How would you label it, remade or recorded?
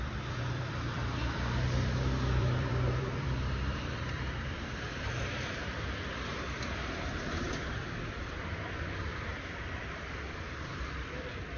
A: remade